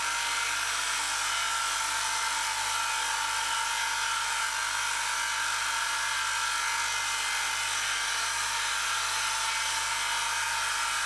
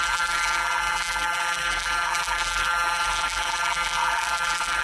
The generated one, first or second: second